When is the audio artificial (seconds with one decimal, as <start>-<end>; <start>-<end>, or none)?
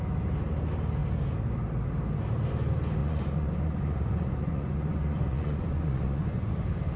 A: 3.0-6.6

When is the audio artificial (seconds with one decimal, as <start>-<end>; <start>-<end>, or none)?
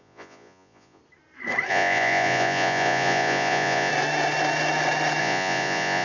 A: 0.0-1.0; 1.7-3.9; 5.2-6.0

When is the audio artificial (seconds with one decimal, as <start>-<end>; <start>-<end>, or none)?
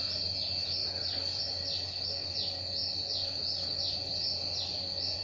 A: none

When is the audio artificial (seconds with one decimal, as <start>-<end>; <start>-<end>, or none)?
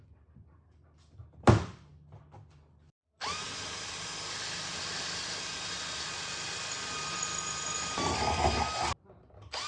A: none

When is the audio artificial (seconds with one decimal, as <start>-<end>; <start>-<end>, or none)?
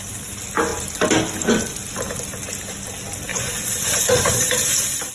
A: 3.3-4.3